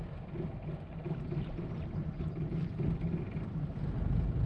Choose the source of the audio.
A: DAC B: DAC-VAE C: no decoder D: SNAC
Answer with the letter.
C